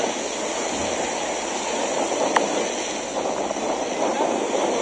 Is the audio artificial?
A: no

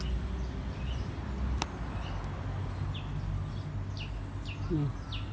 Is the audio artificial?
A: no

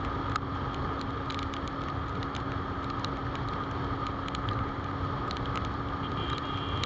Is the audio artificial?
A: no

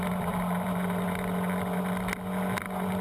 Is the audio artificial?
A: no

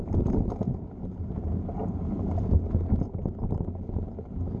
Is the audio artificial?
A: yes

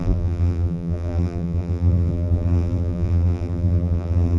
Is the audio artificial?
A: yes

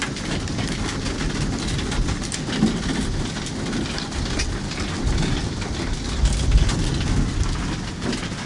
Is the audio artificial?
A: no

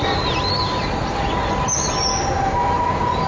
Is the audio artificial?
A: no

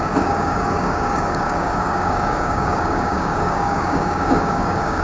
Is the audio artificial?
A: yes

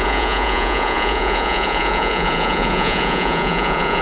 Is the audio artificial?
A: yes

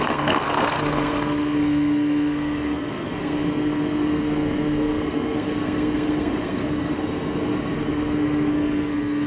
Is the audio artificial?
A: yes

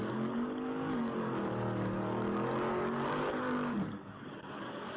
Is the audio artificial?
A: yes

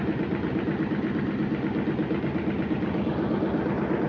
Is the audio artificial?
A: no